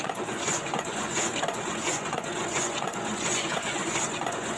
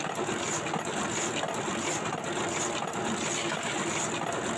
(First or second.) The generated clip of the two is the first